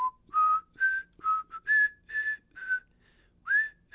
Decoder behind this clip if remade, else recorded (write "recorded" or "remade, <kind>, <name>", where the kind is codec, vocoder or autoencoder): recorded